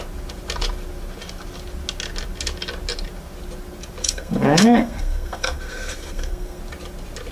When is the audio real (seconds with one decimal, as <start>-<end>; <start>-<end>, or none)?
0.0-4.0; 6.6-7.3